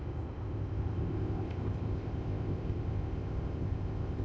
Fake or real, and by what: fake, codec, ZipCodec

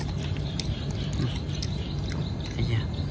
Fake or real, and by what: real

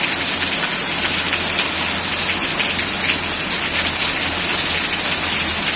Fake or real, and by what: real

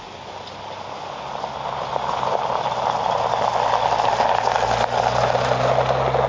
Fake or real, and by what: real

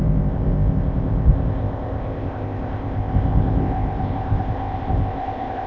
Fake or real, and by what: fake, codec, ZipCodec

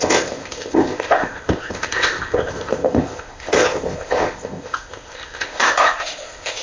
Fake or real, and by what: fake, codec, ZipCodec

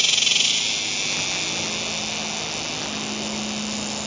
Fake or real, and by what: real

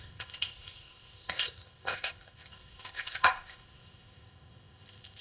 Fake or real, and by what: fake, codec, ZipCodec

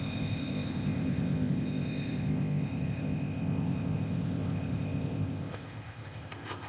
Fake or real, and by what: fake, codec, ZipCodec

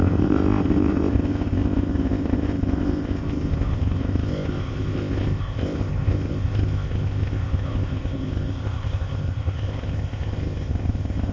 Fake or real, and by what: fake, codec, ZipCodec